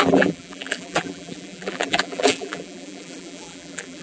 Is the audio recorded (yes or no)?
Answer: no